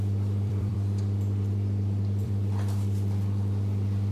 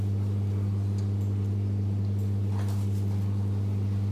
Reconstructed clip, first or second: first